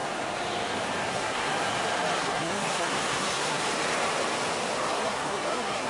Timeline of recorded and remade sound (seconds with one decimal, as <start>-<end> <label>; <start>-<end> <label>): 0.0-1.1 recorded; 1.1-1.5 remade; 1.5-2.2 recorded; 2.2-3.6 remade; 3.6-4.9 recorded; 4.9-5.9 remade